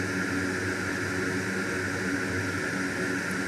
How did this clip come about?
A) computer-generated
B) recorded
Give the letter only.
B